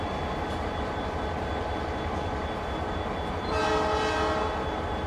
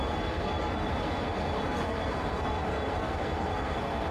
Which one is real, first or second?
first